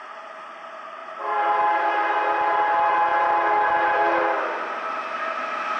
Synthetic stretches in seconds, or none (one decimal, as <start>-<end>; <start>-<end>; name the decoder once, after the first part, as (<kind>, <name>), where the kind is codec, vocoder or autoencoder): 1.0-2.1 (vocoder, BigVGAN v2)